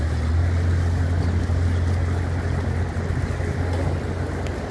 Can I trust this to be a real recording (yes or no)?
yes